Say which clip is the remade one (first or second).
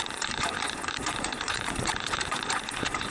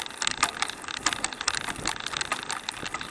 first